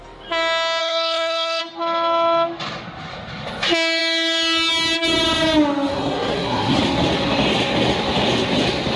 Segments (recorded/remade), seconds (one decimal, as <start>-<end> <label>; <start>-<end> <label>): 0.0-0.8 recorded; 0.8-1.6 remade; 1.6-5.9 recorded; 5.9-6.8 remade; 6.8-9.0 recorded